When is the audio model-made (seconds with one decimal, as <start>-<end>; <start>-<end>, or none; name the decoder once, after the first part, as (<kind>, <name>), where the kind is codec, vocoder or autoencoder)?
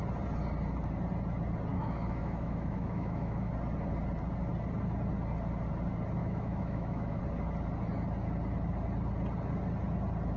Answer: 1.7-3.5 (autoencoder, DAC-VAE); 6.2-7.2